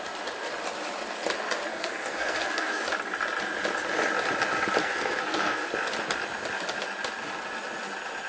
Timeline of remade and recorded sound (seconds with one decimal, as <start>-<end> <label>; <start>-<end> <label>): 0.0-1.7 recorded; 1.7-2.8 remade; 2.8-4.8 recorded; 4.8-5.7 remade; 5.7-8.3 recorded